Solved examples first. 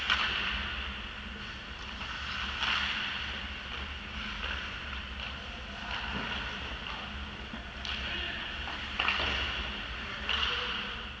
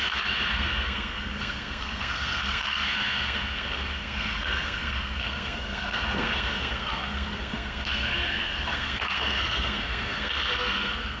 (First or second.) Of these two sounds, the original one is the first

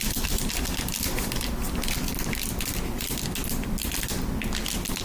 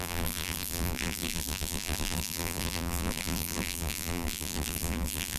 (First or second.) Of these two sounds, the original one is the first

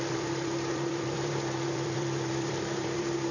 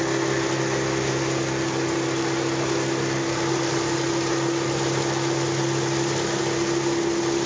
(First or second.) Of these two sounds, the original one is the second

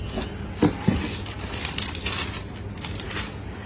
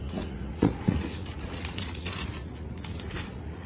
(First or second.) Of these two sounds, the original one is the first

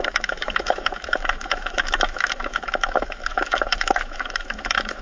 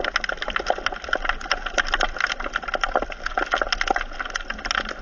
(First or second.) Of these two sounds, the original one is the second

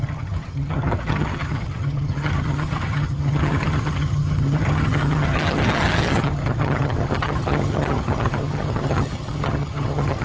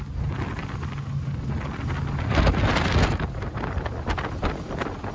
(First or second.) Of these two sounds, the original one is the second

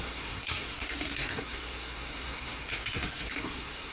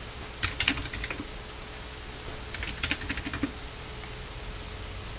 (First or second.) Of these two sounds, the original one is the second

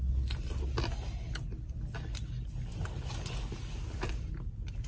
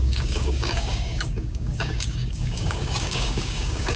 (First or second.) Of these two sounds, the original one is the first